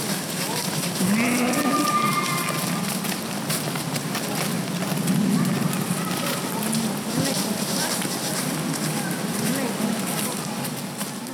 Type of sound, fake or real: real